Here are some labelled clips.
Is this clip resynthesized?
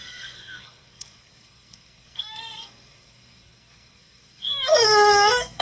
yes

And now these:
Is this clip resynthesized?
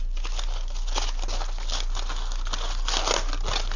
no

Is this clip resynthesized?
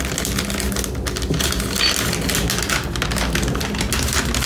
no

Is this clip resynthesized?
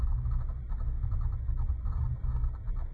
no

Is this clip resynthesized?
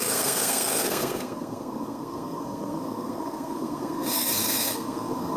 yes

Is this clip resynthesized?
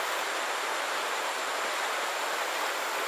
no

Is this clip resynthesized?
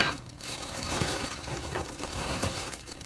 yes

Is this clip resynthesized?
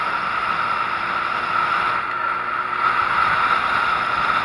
no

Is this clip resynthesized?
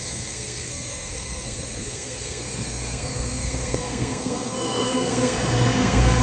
yes